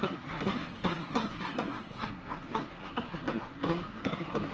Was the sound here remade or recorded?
remade